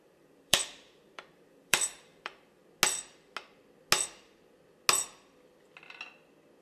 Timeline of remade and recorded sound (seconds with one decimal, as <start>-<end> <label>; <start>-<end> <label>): 0.0-2.6 remade; 2.6-6.6 recorded